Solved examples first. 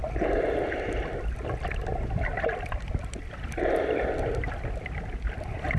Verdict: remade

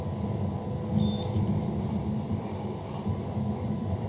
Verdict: recorded